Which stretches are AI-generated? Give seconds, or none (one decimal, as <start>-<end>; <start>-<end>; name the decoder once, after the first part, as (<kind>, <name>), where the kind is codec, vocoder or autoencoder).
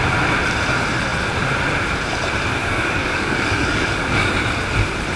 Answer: 2.6-4.3 (codec, DAC)